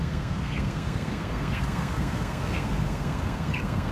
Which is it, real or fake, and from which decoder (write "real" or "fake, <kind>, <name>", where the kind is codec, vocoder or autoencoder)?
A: fake, codec, SNAC